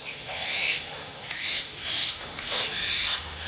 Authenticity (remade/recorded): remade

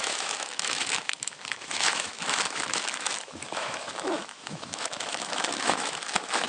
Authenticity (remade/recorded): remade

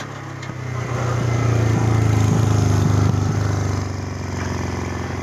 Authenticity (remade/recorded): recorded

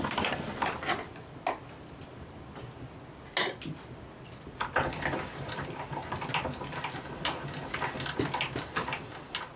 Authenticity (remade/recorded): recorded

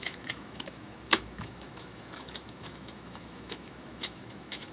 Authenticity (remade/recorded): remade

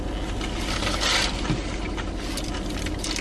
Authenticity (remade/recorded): recorded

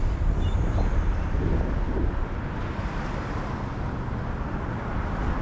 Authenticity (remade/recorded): recorded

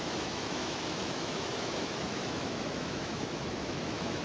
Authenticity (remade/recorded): remade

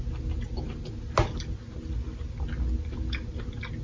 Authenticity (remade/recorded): recorded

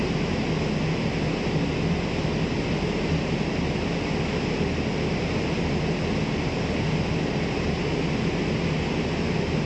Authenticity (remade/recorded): recorded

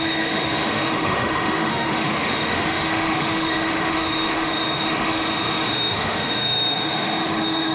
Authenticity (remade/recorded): remade